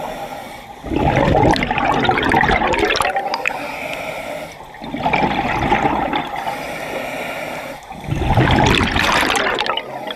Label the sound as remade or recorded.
recorded